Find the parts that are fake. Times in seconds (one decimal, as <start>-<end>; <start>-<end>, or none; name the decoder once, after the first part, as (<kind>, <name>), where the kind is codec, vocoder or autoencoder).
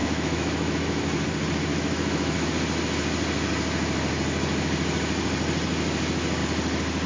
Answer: 0.0-1.0 (autoencoder, DAC-VAE); 1.7-2.5